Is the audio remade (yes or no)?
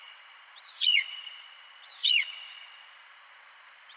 yes